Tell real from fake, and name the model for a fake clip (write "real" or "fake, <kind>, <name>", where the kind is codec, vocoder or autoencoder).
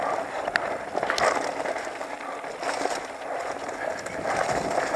real